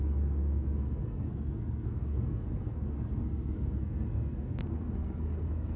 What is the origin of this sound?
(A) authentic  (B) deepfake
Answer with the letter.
B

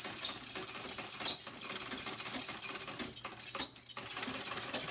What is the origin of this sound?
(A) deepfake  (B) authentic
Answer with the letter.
B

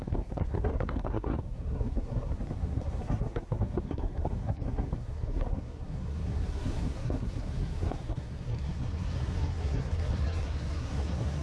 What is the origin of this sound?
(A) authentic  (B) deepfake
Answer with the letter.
B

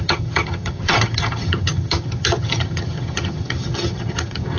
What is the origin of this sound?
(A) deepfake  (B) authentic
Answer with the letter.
A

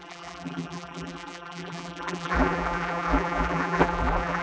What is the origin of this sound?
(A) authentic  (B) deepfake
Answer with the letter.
B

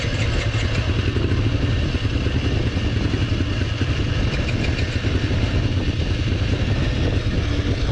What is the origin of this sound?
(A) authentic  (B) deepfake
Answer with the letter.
A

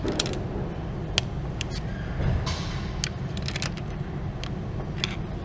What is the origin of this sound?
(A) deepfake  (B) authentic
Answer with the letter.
B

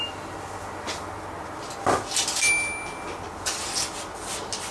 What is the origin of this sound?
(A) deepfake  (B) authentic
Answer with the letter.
B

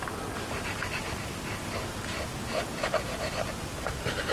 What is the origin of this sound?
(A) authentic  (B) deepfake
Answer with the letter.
A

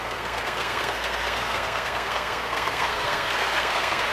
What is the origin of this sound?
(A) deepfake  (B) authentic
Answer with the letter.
A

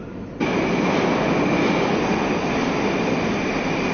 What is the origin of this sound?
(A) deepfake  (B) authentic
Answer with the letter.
B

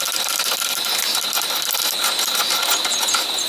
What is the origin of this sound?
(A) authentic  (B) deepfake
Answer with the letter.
A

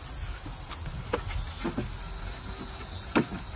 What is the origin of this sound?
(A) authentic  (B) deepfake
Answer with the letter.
A